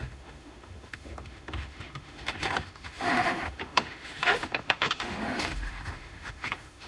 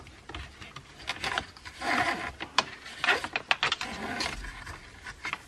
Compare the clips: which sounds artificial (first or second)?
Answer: first